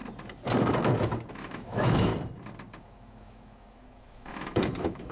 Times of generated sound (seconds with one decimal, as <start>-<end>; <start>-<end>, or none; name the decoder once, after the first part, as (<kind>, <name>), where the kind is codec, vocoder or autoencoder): 1.3-2.1 (autoencoder, DAC-VAE); 2.8-5.1